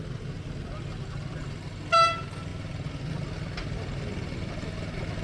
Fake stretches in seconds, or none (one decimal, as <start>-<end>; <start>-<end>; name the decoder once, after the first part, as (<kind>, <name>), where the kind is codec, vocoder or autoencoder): none